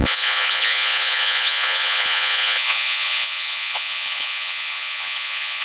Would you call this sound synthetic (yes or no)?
yes